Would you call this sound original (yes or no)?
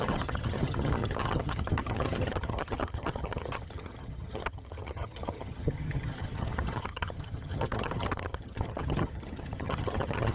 no